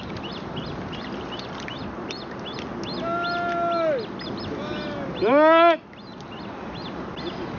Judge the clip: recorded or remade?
recorded